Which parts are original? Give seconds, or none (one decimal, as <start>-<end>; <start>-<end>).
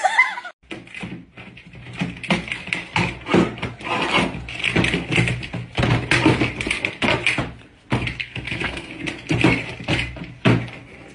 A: 0.0-8.2; 8.9-11.1